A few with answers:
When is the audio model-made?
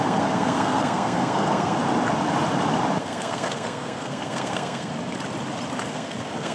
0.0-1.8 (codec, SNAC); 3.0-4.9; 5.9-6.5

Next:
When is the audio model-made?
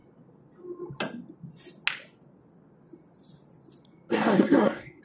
4.1-5.0 (codec, SNAC)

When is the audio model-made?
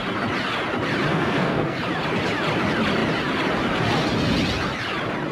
1.1-1.8 (codec, SNAC)